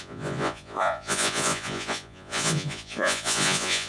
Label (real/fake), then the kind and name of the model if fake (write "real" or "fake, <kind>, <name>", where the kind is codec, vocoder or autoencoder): fake, vocoder, Vocos